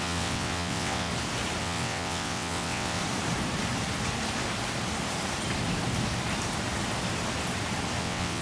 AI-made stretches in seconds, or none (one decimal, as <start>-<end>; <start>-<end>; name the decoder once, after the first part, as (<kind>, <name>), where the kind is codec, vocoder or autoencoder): 0.0-1.1 (vocoder, WaveNeXt); 1.6-3.0; 8.0-8.4